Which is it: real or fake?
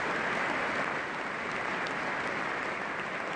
real